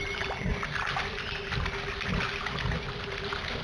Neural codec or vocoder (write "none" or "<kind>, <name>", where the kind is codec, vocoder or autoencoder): none